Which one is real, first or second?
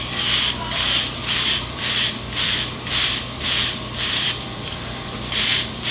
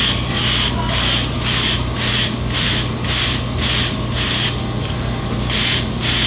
second